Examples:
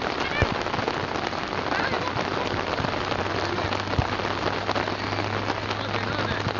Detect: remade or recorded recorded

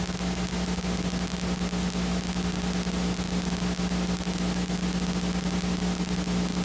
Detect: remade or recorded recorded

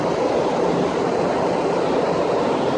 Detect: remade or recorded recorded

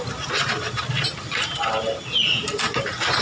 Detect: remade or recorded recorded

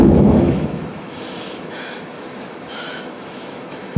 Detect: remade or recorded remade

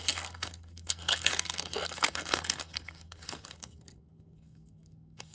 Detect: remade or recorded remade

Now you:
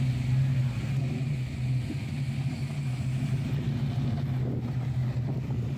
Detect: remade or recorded recorded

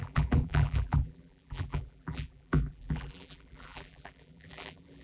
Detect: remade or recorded remade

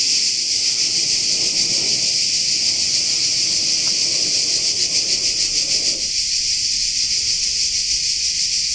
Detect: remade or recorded recorded